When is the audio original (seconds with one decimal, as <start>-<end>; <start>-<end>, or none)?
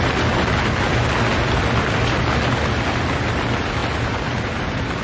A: 0.0-3.8